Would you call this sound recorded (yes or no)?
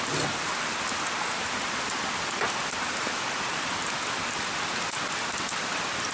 yes